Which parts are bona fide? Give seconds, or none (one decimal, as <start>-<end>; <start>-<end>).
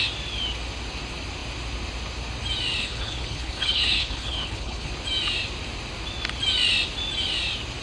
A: 0.0-2.8; 4.9-7.8